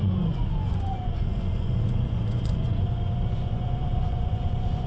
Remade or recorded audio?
remade